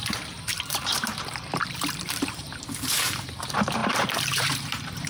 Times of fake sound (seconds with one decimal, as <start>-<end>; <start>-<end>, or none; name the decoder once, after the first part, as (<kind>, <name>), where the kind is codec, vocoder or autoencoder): 0.0-5.1 (vocoder, BigVGAN v2)